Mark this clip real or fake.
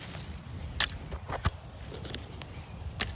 real